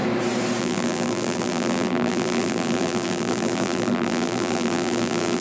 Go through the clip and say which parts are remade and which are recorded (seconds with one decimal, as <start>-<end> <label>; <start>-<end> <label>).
0.0-0.6 recorded; 0.6-5.4 remade